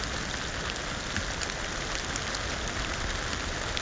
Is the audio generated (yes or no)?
no